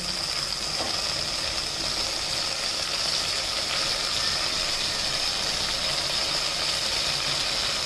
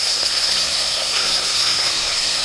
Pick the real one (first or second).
first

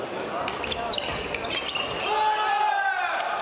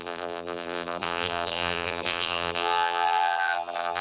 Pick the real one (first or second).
first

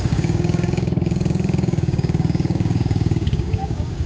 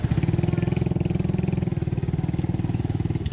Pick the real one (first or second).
second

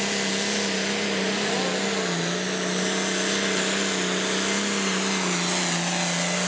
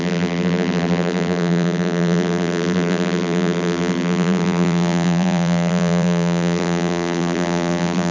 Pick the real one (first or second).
first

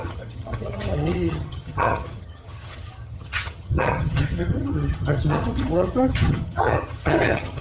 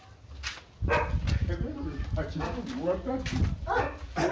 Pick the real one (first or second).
second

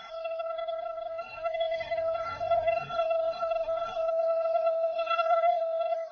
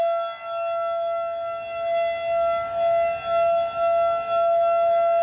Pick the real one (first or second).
second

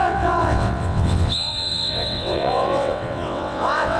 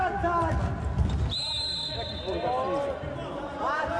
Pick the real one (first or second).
second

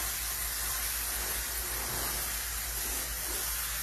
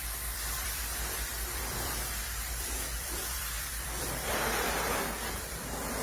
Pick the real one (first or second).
first